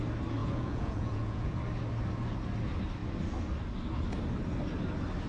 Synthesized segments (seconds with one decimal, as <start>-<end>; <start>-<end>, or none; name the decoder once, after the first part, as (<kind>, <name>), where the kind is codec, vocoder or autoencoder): 0.4-1.6 (vocoder, Vocos)